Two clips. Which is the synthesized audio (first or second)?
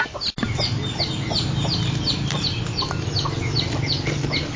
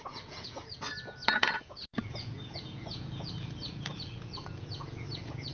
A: second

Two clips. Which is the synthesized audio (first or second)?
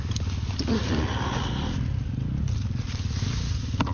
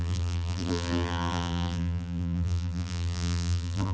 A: second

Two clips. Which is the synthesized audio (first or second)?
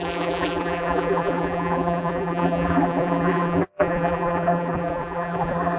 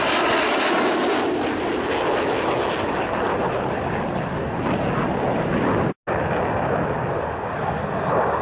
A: first